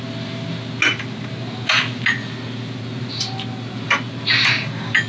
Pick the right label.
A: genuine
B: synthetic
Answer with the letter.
A